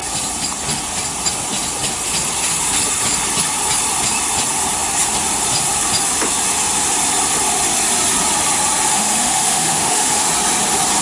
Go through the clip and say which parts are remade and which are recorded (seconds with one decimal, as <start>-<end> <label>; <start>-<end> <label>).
0.0-8.9 recorded; 8.9-10.3 remade; 10.3-11.0 recorded